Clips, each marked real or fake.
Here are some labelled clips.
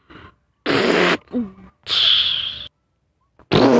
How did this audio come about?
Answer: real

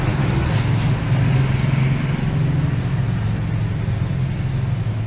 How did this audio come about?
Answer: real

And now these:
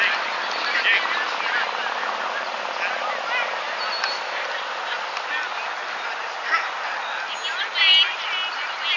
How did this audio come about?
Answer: real